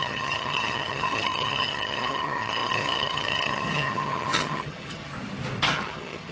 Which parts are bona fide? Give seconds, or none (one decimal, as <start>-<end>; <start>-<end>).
5.1-5.7